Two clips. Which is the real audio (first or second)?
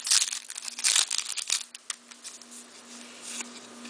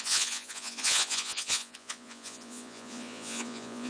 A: first